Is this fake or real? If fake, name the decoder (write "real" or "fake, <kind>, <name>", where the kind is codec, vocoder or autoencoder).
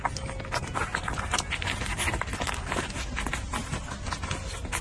real